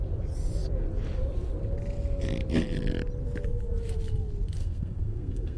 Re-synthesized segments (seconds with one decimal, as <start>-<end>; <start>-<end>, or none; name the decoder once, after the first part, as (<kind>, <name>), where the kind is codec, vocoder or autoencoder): 4.6-5.6 (codec, SNAC)